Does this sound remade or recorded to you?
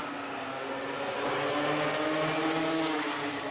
recorded